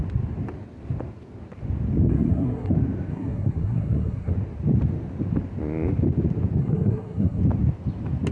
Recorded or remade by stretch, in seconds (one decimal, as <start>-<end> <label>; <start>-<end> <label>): 0.0-2.1 recorded; 2.1-2.7 remade; 2.7-3.1 recorded; 3.1-4.3 remade; 4.3-6.6 recorded; 6.6-7.4 remade; 7.4-8.3 recorded